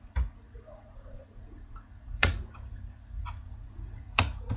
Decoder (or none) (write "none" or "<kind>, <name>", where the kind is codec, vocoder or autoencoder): vocoder, Vocos